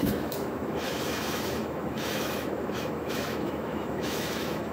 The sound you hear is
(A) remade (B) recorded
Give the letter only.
A